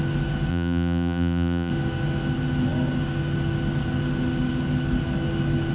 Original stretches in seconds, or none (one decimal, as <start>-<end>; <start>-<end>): 0.0-0.5; 1.7-5.7